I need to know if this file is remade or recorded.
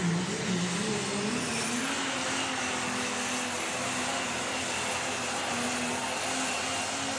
recorded